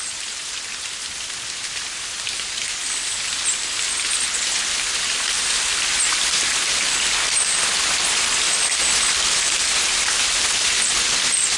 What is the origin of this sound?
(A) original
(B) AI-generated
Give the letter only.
A